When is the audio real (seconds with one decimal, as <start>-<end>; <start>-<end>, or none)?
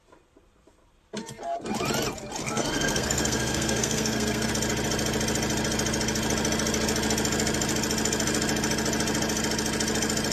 0.0-2.4; 4.5-10.3